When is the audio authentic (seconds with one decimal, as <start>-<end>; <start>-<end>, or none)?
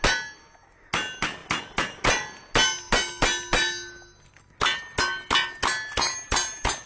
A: 0.0-6.9